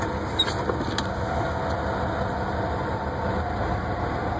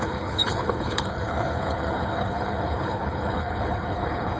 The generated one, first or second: second